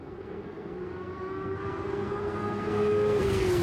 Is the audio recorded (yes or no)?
no